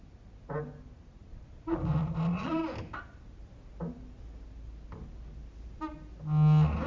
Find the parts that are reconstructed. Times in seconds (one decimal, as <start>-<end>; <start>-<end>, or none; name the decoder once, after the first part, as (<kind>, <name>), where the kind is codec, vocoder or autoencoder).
1.3-2.6 (vocoder, Vocos)